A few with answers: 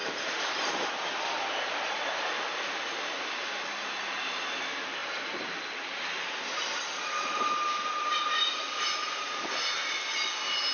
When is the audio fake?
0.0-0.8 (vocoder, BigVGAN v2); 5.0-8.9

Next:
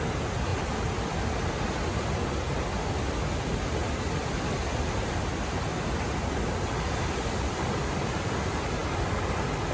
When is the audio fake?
none

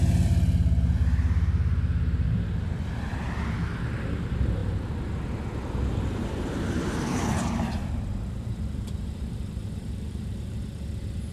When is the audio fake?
6.2-10.6 (vocoder, BigVGAN v2)